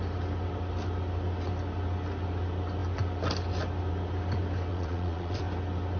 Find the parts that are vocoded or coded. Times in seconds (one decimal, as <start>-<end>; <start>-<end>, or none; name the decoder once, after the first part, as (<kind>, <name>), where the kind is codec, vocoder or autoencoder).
4.7-5.4 (vocoder, Vocos)